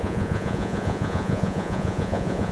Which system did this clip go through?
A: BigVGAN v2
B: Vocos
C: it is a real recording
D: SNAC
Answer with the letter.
B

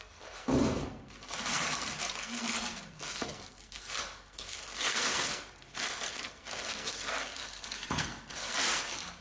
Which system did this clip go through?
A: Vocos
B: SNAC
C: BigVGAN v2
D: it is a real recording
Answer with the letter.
B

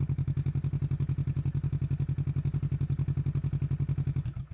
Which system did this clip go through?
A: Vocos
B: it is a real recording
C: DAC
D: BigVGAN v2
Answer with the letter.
B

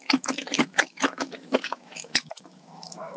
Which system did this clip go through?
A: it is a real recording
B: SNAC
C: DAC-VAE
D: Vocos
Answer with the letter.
C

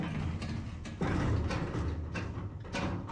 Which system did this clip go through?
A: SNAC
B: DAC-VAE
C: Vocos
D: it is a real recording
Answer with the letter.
D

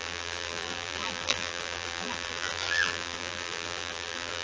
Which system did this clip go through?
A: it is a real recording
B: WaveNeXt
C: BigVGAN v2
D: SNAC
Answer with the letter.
C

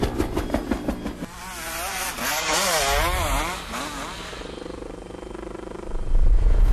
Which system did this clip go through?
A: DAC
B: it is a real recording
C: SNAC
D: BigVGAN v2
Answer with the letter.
B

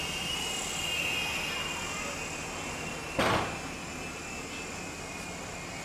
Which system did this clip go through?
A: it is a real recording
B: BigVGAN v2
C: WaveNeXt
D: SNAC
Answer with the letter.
A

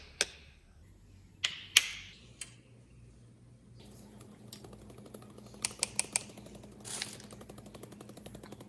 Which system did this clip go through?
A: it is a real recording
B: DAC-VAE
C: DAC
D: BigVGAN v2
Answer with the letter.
A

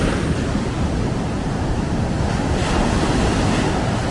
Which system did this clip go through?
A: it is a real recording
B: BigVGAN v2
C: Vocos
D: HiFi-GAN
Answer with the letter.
A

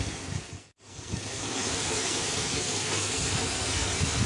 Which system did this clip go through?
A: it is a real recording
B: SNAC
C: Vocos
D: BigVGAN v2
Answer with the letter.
B